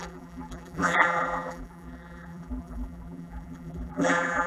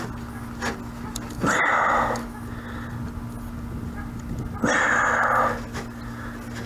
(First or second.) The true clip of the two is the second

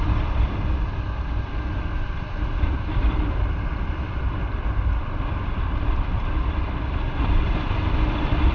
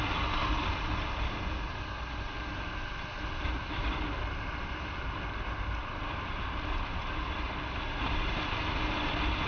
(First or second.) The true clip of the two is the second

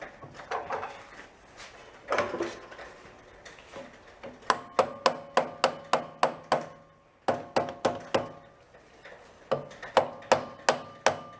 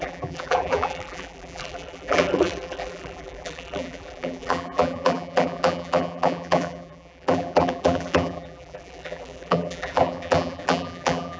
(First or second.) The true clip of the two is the first